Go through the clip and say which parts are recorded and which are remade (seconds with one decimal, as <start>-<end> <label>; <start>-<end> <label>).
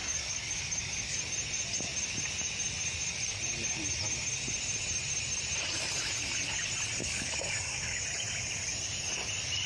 0.0-1.2 remade; 1.2-7.0 recorded; 7.0-8.0 remade; 8.0-9.7 recorded